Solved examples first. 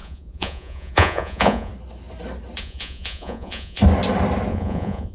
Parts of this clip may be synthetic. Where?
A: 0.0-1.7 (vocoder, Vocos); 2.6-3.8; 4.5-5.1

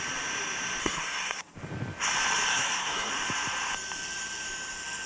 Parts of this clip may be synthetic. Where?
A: 0.8-1.4 (codec, SNAC); 2.5-3.1

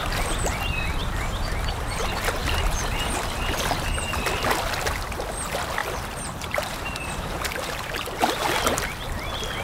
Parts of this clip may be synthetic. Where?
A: 1.0-2.0 (vocoder, BigVGAN v2); 5.8-7.9